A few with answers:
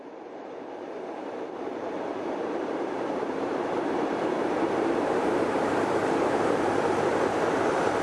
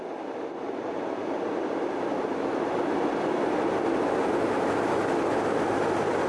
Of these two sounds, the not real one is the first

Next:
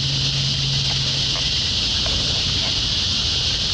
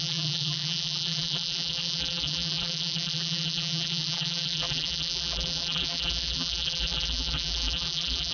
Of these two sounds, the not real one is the second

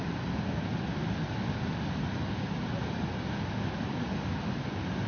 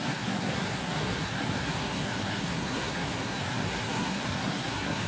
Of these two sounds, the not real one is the second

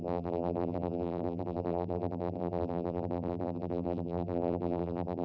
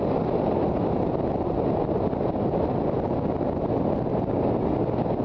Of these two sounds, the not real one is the first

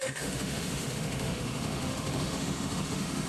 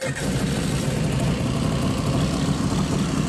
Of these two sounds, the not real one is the first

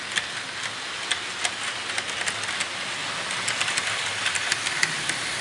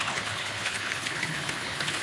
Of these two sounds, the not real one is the second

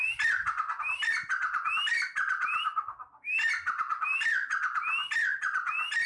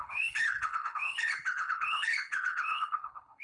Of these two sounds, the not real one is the second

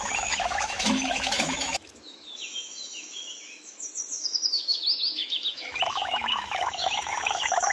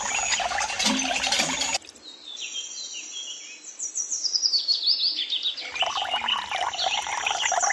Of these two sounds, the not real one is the first